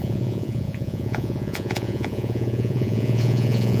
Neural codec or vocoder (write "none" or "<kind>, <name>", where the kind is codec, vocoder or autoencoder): vocoder, Vocos